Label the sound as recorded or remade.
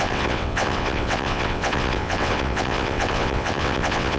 remade